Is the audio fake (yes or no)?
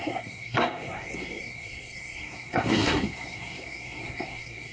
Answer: yes